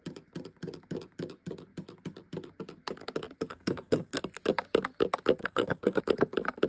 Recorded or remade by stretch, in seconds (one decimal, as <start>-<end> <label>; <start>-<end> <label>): 0.0-3.5 recorded; 3.5-4.2 remade; 4.2-5.4 recorded; 5.4-6.0 remade; 6.0-6.7 recorded